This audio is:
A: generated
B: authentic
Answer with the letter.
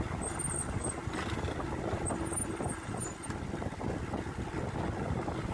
B